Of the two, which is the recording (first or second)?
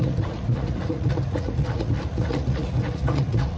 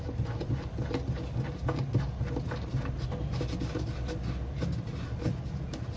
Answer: second